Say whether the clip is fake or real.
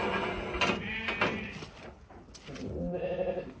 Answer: real